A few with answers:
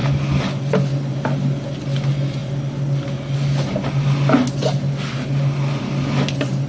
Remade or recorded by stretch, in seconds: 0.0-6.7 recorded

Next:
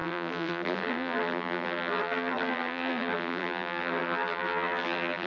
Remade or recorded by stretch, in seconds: 0.0-5.3 remade

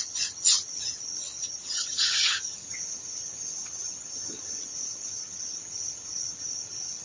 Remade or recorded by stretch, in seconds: 0.0-7.0 remade

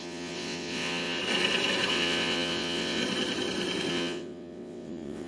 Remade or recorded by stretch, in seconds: 0.0-1.2 remade; 1.2-1.9 recorded; 1.9-3.0 remade; 3.0-3.9 recorded; 3.9-5.3 remade

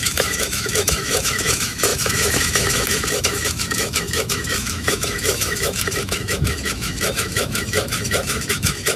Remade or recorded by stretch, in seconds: 0.0-9.0 remade

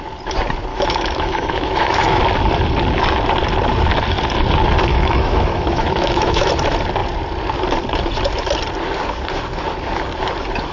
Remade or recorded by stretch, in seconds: 0.0-0.7 recorded; 0.7-2.2 remade; 2.2-4.9 recorded; 4.9-6.5 remade; 6.5-10.7 recorded

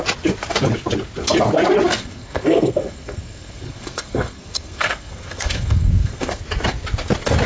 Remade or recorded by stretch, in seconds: 0.0-1.9 recorded; 1.9-6.4 remade; 6.4-7.5 recorded

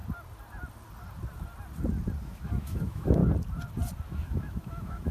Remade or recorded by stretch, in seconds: 0.0-2.2 recorded; 2.2-3.2 remade; 3.2-4.1 recorded; 4.1-5.1 remade